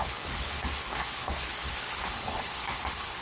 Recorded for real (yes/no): no